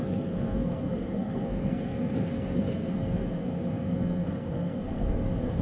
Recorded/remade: remade